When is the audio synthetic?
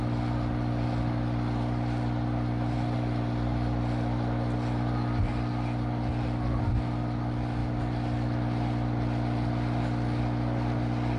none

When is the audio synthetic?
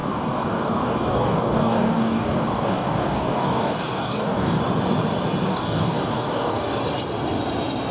0.0-4.6 (codec, DAC); 5.5-6.8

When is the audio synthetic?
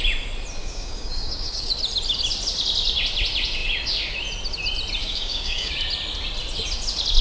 0.6-1.7 (codec, DAC); 5.0-5.7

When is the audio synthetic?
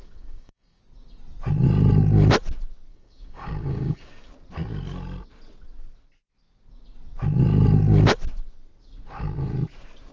0.0-0.8 (codec, DAC); 2.9-4.3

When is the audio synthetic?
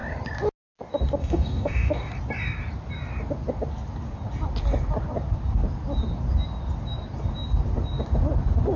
1.2-2.1 (codec, DAC)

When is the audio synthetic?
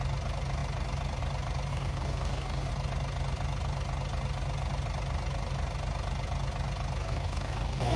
1.7-2.7 (codec, DAC); 7.0-8.0